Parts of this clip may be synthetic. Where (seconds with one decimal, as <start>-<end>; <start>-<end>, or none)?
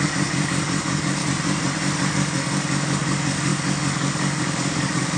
0.0-1.2; 2.1-5.2